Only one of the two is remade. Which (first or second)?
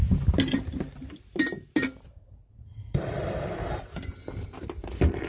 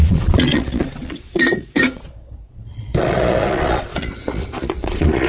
second